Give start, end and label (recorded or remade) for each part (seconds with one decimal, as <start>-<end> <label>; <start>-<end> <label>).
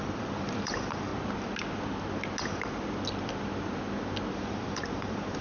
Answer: 0.0-1.1 remade; 1.1-4.3 recorded; 4.3-5.4 remade